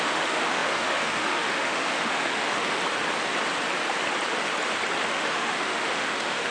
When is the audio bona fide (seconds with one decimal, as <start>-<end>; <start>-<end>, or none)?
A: 2.8-5.1